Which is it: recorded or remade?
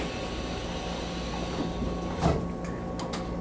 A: recorded